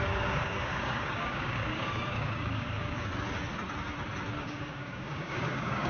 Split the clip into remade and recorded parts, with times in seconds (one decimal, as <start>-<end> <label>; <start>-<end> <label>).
0.0-3.1 remade; 3.1-4.4 recorded; 4.4-5.9 remade